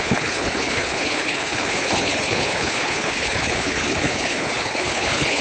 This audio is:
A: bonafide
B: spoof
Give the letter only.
B